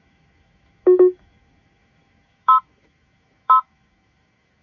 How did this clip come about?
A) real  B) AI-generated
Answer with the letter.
B